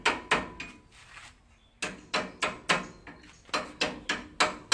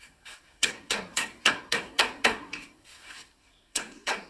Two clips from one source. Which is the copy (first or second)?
second